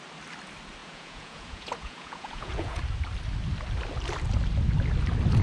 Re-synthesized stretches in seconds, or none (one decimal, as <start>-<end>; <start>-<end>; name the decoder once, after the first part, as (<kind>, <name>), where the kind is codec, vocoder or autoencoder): 0.8-2.8 (vocoder, Vocos)